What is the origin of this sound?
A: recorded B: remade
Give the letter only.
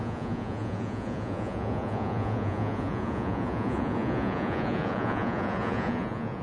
B